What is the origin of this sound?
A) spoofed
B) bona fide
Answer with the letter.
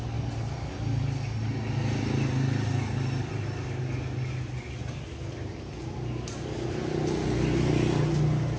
B